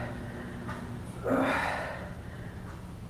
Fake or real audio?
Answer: real